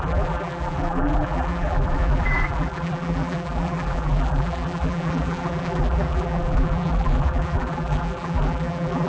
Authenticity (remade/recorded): remade